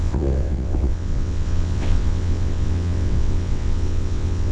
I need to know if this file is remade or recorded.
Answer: remade